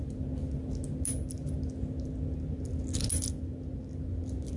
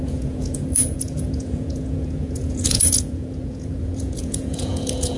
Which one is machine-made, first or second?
second